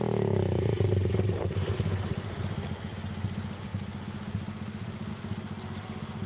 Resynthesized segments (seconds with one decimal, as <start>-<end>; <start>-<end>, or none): none